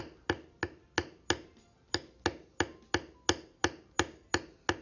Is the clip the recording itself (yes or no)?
yes